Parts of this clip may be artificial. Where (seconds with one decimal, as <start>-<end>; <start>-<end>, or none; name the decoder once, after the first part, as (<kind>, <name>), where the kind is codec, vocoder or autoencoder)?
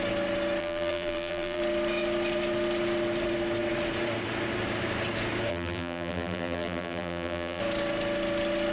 0.6-1.6 (vocoder, BigVGAN v2); 5.5-7.6